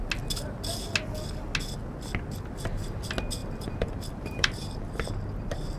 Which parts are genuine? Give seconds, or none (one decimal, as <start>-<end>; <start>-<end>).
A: 0.0-3.4; 5.1-5.8